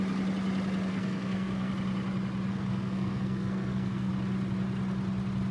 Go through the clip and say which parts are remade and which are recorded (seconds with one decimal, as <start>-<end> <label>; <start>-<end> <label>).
0.0-0.9 recorded; 0.9-1.7 remade; 1.7-2.5 recorded; 2.5-4.1 remade; 4.1-5.5 recorded